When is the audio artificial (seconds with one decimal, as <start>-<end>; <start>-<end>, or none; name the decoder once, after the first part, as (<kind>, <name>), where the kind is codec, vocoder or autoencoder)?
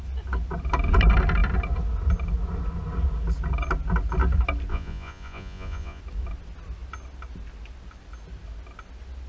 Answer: 4.7-6.0 (vocoder, Vocos)